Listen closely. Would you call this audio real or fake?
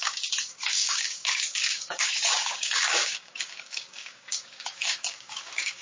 fake